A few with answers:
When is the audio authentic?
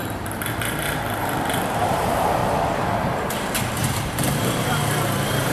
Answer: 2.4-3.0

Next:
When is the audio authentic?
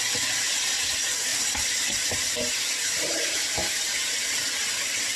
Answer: 0.0-1.3; 4.4-5.2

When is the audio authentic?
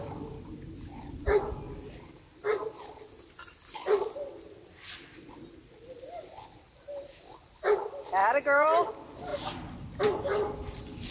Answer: 0.0-8.2; 8.9-9.3; 10.0-11.1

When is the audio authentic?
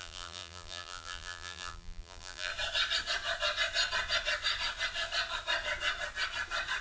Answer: 2.5-6.8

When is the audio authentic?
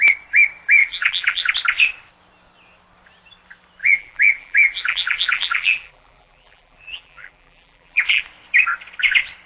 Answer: 0.0-0.8; 1.5-3.8; 8.2-9.5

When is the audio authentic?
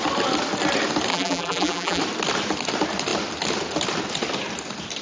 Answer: 0.0-1.1; 2.0-5.0